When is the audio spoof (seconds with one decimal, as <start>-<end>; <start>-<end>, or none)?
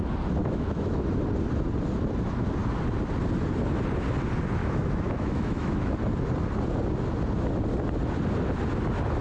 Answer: 0.4-1.2; 4.6-5.9